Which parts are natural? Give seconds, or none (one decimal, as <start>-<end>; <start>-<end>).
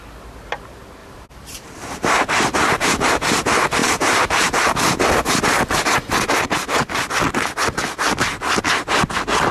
0.0-1.0; 3.1-3.8; 4.6-9.5